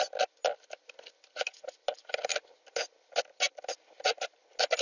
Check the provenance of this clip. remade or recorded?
recorded